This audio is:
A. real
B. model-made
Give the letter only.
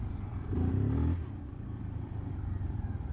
B